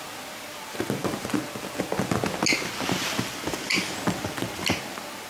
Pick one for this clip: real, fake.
real